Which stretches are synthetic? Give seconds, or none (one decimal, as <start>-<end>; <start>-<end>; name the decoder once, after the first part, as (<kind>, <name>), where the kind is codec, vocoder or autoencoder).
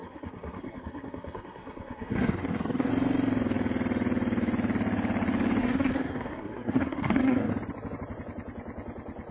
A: 0.0-2.9 (codec, SNAC); 5.6-7.5